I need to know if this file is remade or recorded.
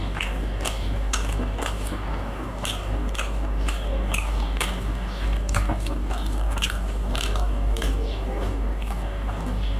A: remade